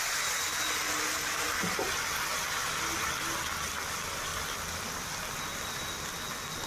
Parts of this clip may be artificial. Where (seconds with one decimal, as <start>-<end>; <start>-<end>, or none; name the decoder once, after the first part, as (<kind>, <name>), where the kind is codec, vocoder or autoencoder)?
none